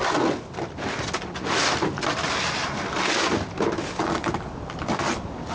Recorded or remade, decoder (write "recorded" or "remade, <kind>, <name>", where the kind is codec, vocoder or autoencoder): recorded